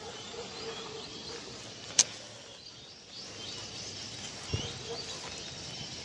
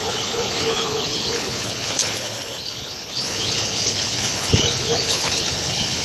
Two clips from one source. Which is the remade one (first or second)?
second